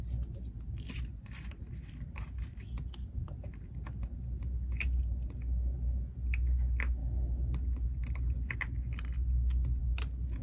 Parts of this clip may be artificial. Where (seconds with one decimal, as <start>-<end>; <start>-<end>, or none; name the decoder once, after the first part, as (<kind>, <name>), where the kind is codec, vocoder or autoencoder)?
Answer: none